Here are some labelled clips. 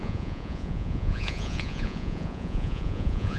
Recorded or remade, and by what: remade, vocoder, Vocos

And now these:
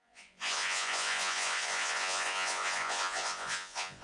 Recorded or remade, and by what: remade, vocoder, Vocos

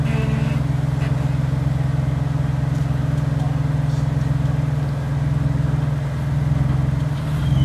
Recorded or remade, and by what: recorded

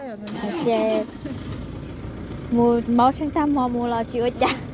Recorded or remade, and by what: recorded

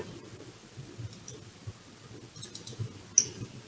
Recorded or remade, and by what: recorded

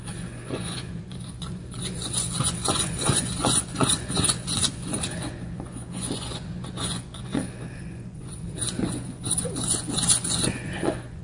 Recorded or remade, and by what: remade, vocoder, Vocos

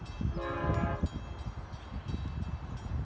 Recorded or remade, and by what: recorded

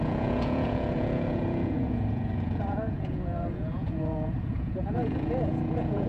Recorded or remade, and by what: remade, vocoder, Vocos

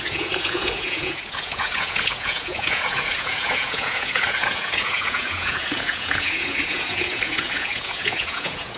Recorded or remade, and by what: remade, vocoder, Vocos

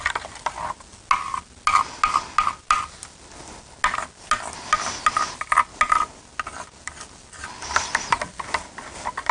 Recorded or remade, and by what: recorded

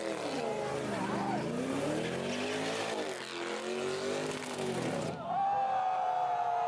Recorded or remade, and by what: recorded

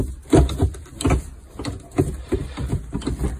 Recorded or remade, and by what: recorded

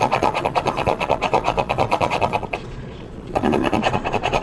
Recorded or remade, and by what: remade, vocoder, Vocos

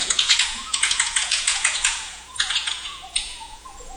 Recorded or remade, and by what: remade, vocoder, Vocos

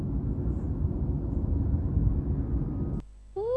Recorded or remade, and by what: recorded